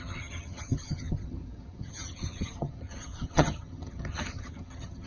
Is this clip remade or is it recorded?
remade